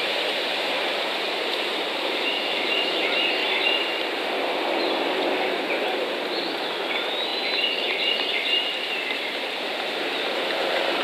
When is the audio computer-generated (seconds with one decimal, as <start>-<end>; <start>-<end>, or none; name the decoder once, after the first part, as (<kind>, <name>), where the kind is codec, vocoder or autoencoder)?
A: 0.0-3.4 (vocoder, BigVGAN v2); 6.5-11.0